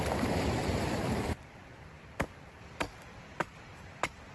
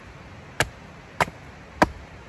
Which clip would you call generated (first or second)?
first